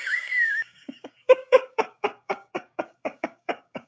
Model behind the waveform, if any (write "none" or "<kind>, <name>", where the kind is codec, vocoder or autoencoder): codec, DAC